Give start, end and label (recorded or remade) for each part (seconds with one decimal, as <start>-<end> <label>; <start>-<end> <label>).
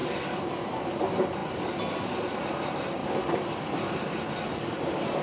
0.0-5.2 recorded